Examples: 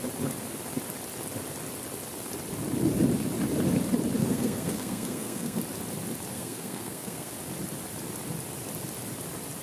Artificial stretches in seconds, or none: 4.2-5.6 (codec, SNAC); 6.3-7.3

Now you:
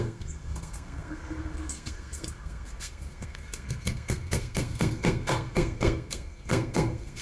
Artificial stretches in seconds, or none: 0.0-7.2 (codec, SNAC)

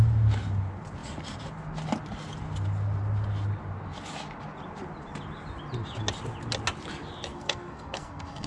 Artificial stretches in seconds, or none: 7.3-8.5 (codec, SNAC)

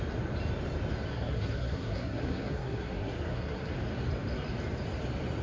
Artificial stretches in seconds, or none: 1.1-3.7 (codec, SNAC)